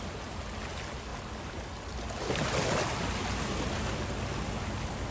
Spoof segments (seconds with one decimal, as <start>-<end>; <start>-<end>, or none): none